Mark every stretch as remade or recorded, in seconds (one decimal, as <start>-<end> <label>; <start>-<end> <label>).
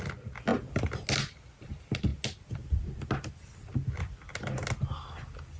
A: 0.0-5.6 recorded